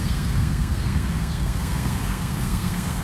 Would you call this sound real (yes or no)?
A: no